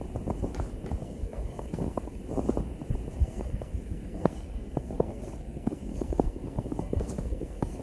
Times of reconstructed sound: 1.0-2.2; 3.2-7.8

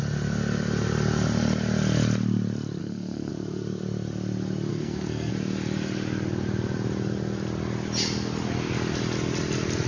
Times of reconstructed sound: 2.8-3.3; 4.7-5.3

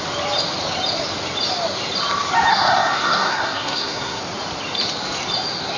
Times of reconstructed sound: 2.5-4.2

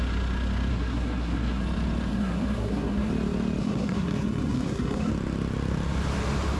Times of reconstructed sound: 0.7-1.6; 2.1-3.1; 3.6-5.1